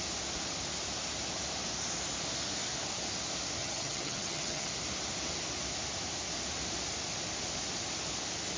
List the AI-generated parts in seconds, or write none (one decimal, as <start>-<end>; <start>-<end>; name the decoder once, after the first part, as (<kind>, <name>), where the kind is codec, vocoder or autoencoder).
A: 3.6-4.7 (vocoder, HiFi-GAN)